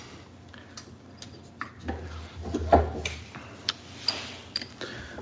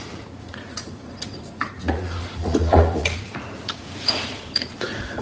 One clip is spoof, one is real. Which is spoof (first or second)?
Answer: second